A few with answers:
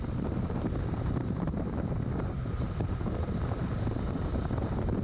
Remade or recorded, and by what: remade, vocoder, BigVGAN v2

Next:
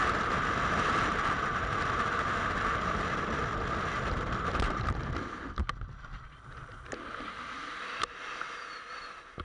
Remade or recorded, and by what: recorded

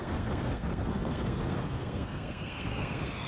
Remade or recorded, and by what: remade, codec, SNAC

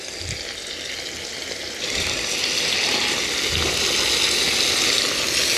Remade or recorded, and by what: recorded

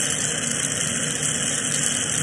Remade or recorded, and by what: recorded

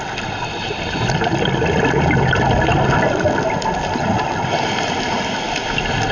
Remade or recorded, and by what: recorded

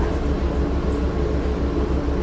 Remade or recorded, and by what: recorded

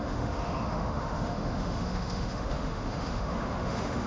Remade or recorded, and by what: remade, autoencoder, DAC-VAE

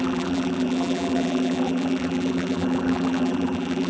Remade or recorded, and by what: remade, vocoder, BigVGAN v2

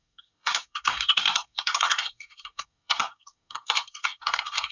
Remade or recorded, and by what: remade, codec, SNAC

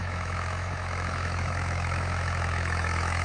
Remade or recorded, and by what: remade, autoencoder, DAC-VAE